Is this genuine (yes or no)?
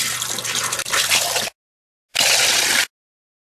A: yes